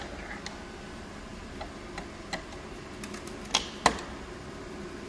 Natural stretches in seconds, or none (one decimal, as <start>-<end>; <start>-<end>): 0.0-5.1